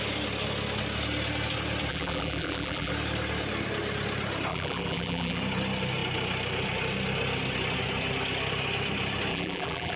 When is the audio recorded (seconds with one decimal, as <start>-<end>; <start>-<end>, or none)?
0.0-1.9; 2.9-4.5; 5.4-9.3